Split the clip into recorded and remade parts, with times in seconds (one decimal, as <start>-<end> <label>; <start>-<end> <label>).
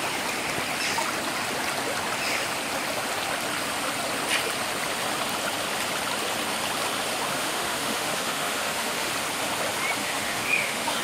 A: 0.0-7.3 recorded; 7.3-9.1 remade; 9.1-10.0 recorded; 10.0-11.0 remade